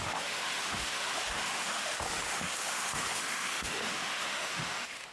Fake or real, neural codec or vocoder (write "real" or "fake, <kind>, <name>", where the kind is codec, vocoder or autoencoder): fake, autoencoder, DAC-VAE